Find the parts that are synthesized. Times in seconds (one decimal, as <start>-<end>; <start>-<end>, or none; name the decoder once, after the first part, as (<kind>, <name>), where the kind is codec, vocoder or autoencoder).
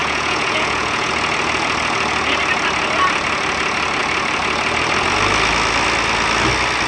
0.0-1.1 (vocoder, Vocos)